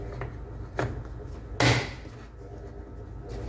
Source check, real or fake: real